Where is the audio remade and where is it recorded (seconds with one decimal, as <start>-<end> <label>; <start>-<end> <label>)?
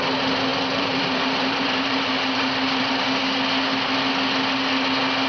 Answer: 0.0-0.5 recorded; 0.5-2.9 remade; 2.9-5.3 recorded